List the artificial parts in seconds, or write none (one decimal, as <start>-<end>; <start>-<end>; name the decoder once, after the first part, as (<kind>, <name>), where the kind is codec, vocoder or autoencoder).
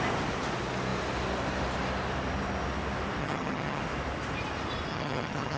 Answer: 3.2-3.8 (vocoder, HiFi-GAN); 4.9-5.6